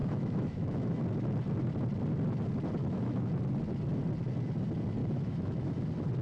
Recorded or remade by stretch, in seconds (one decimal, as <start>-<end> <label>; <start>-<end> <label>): 0.0-1.0 remade; 1.0-2.8 recorded; 2.8-3.3 remade; 3.3-5.0 recorded; 5.0-5.7 remade; 5.7-6.2 recorded